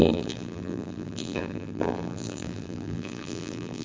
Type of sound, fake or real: fake